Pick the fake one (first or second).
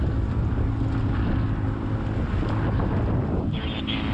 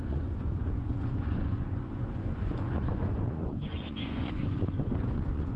second